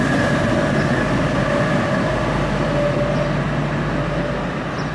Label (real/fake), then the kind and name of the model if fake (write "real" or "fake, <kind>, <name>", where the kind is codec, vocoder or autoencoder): real